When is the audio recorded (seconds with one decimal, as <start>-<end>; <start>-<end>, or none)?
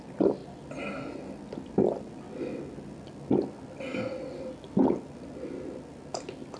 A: 0.0-6.6